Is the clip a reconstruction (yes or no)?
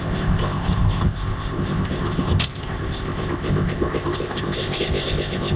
yes